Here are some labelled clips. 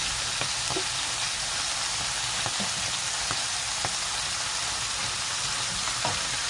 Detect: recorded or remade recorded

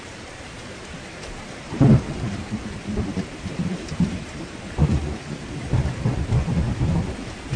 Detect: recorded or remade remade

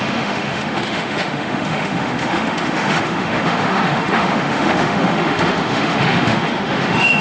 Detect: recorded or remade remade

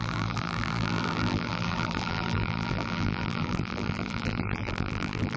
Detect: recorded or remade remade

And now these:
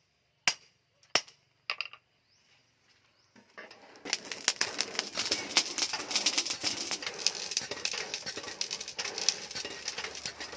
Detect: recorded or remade recorded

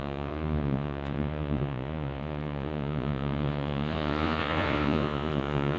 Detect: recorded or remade remade